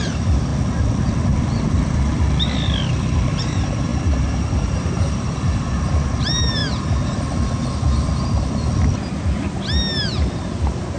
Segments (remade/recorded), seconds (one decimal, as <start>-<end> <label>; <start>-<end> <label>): 0.0-0.5 remade; 0.5-3.3 recorded; 3.3-6.6 remade; 6.6-10.4 recorded; 10.4-11.0 remade